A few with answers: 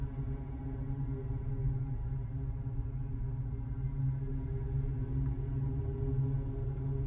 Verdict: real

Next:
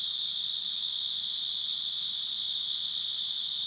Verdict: real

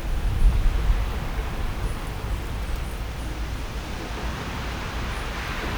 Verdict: fake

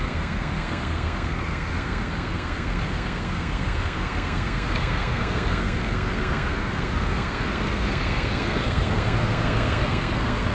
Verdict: fake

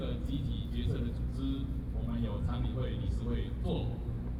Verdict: real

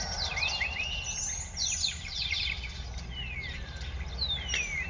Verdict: real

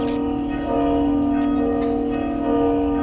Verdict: real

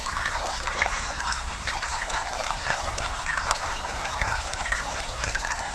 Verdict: fake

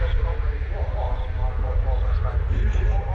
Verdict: real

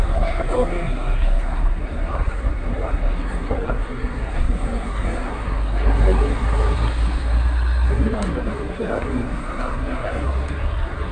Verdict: fake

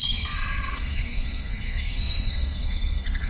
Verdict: fake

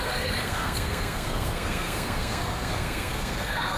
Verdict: fake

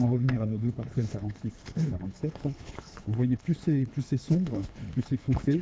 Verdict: fake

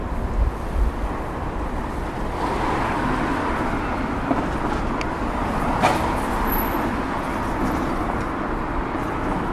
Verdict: real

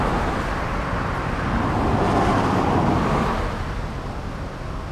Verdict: real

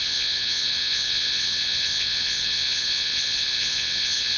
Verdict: fake